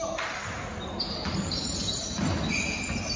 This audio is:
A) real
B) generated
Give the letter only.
A